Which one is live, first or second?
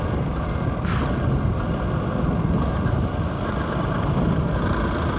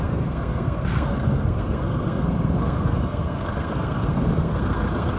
first